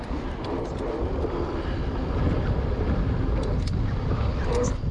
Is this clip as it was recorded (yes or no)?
yes